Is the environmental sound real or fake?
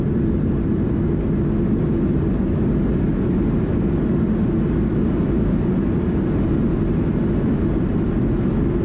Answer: real